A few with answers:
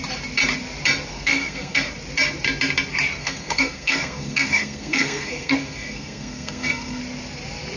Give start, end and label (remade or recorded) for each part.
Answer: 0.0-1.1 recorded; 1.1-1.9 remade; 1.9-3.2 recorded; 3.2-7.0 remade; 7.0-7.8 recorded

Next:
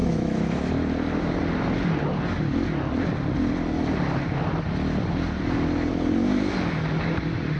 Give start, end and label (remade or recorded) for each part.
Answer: 0.0-0.7 remade; 0.7-7.6 recorded